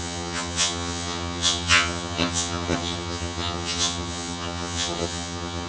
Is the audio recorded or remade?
remade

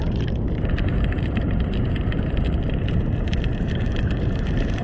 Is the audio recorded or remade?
remade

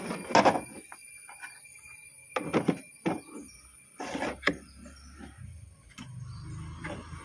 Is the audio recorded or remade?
recorded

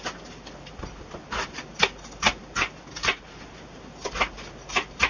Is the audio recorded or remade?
recorded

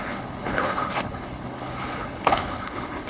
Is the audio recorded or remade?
remade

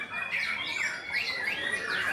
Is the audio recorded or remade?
recorded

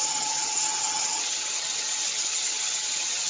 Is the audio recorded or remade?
remade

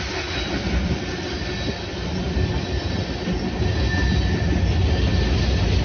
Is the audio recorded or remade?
recorded